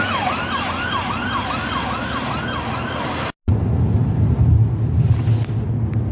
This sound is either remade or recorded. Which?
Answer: recorded